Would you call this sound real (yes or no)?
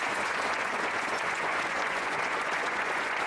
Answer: no